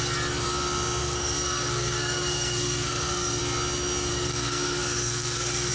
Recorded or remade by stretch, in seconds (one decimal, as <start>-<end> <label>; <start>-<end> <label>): 0.0-1.0 recorded; 1.0-3.4 remade; 3.4-4.1 recorded; 4.1-5.7 remade